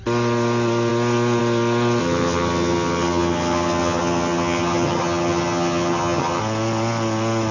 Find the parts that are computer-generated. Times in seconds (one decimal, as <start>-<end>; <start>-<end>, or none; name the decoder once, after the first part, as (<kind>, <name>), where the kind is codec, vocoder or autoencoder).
2.0-6.4 (vocoder, HiFi-GAN)